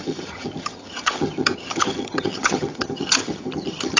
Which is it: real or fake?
fake